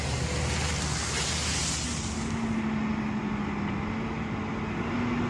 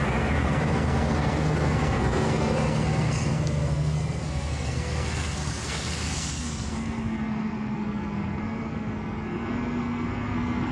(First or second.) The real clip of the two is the first